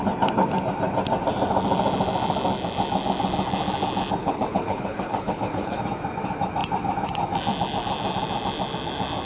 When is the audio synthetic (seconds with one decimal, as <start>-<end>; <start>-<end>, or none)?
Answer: 4.2-5.8